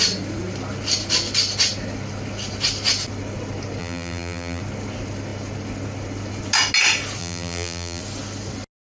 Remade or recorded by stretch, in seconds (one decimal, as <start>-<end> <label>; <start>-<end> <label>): 0.0-3.8 recorded; 3.8-4.6 remade; 4.6-7.2 recorded; 7.2-8.0 remade; 8.0-8.9 recorded